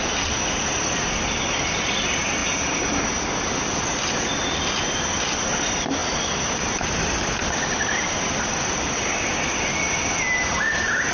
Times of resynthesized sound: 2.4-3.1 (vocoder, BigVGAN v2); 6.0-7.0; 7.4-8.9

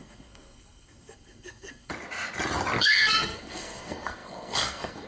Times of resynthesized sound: 0.0-1.9 (codec, SNAC); 2.8-5.1

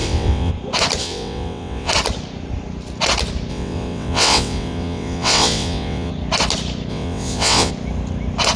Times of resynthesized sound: 0.0-0.5 (vocoder, WaveNeXt); 1.0-1.9; 3.5-6.1; 6.9-7.7

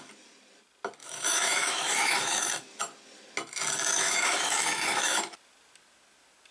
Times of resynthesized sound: 1.0-2.5 (autoencoder, DAC-VAE); 3.9-5.2

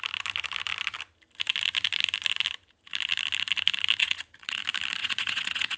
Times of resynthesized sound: 4.0-4.6 (vocoder, Vocos); 5.0-5.8

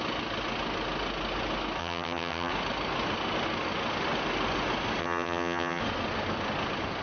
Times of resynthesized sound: 1.8-2.5 (vocoder, HiFi-GAN); 5.0-5.8